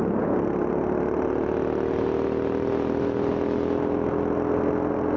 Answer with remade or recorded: recorded